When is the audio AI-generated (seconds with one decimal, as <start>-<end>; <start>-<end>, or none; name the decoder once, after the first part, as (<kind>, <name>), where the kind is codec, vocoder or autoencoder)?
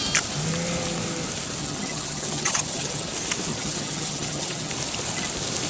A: 1.6-3.1 (vocoder, HiFi-GAN); 3.5-4.7